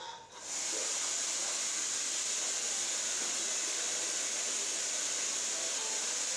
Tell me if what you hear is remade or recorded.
recorded